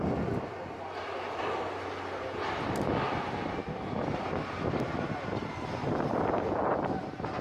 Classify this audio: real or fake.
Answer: real